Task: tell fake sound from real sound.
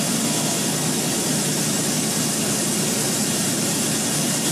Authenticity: real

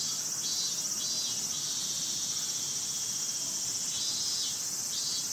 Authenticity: real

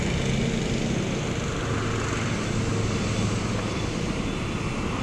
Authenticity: real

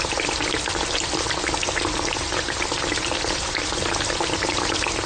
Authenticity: real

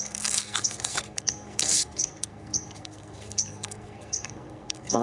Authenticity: fake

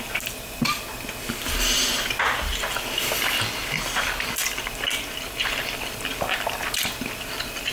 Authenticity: real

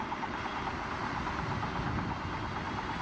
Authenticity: real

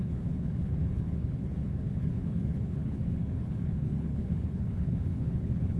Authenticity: fake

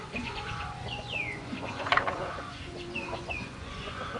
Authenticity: fake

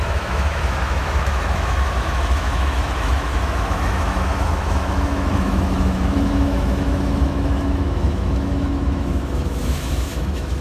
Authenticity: fake